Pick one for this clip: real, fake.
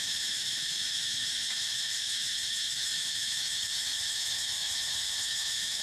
fake